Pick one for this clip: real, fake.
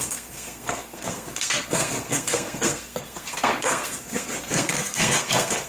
fake